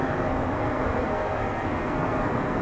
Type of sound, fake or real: fake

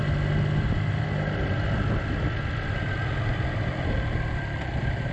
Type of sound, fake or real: real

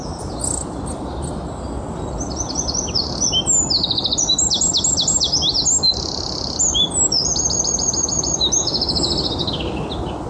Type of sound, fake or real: real